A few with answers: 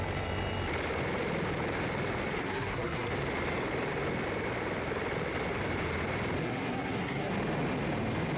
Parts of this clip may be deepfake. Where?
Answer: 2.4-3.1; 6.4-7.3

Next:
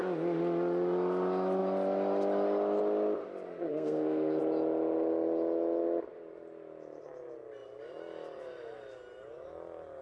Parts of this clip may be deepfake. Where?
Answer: 3.7-4.4

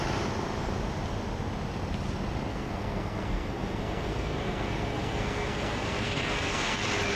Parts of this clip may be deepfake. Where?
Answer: 2.5-6.8

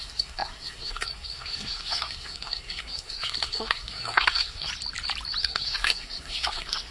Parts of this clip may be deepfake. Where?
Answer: 0.0-4.7; 5.4-6.9

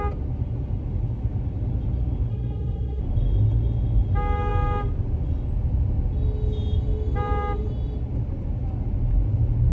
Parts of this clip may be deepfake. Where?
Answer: 2.3-3.0

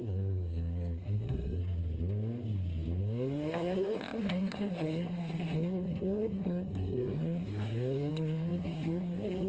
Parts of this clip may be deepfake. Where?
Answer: 0.0-1.6; 3.0-9.5

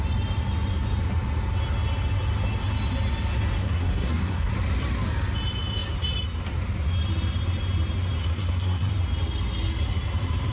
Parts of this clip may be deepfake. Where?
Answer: 3.6-4.5; 8.2-8.9